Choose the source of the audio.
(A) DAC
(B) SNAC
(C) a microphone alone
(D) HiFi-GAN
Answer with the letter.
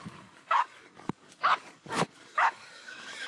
A